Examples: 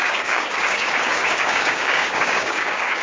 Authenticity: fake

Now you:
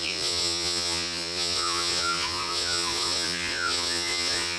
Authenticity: fake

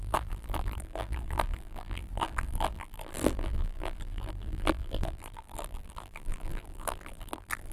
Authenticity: fake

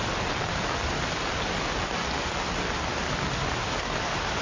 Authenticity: real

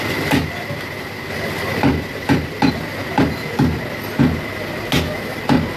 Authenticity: real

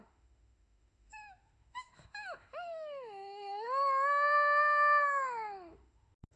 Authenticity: fake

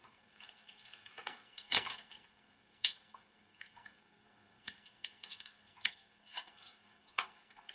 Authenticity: fake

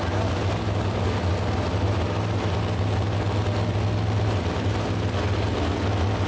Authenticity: real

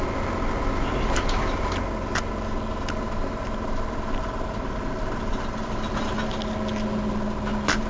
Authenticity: real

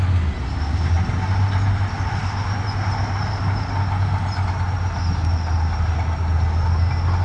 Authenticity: real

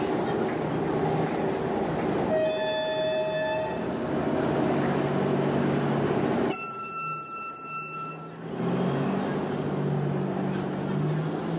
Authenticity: real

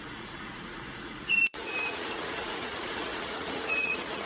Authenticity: fake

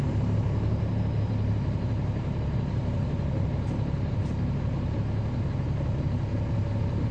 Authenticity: real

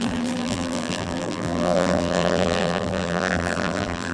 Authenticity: fake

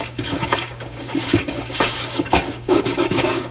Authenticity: fake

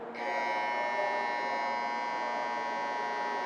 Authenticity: real